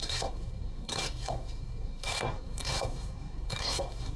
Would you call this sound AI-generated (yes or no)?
yes